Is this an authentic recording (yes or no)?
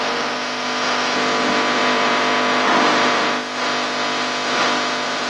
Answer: yes